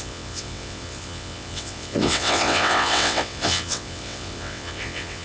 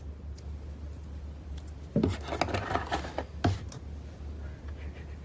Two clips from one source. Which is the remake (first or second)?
first